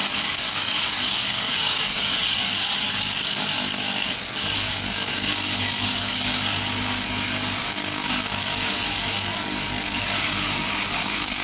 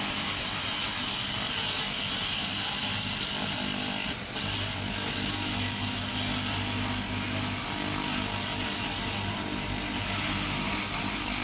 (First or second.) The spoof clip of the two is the first